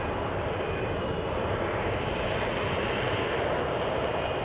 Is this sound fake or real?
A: real